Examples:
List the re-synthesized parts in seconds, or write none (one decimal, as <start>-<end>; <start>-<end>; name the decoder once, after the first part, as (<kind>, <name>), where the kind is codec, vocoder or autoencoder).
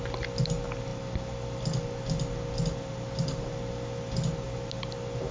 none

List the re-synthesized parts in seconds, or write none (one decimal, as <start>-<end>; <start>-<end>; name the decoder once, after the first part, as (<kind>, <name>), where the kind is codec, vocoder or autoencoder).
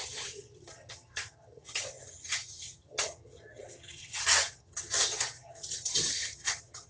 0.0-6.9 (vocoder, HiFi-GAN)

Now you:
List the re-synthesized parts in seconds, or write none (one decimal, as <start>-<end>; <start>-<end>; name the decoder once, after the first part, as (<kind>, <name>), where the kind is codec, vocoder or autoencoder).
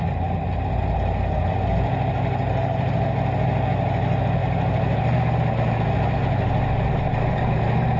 none